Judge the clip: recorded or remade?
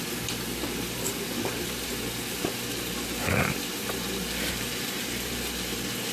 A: remade